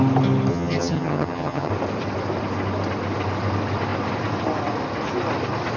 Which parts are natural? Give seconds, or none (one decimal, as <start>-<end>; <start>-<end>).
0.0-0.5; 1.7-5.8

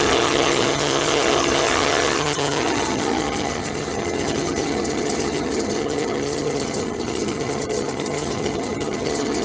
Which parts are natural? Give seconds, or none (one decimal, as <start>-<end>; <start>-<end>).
none

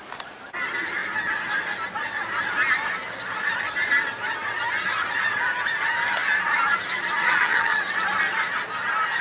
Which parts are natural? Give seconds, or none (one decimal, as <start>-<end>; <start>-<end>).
0.0-7.2; 7.8-9.2

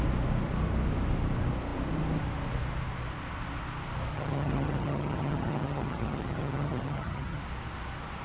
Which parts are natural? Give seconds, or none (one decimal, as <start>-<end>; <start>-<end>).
0.0-4.1; 7.4-8.2

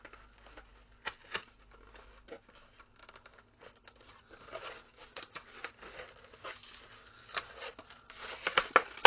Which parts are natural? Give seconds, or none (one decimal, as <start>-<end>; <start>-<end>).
0.0-9.1

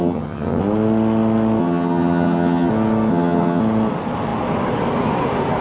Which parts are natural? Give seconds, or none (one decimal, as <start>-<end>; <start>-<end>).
0.6-1.6; 2.7-3.1; 3.6-5.6

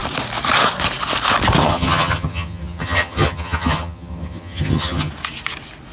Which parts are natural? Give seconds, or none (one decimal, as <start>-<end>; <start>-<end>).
0.0-1.6; 5.1-5.9

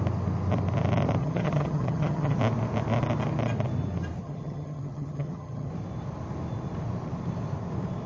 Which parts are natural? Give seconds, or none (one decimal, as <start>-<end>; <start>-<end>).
0.0-1.2; 2.4-4.2; 5.7-8.1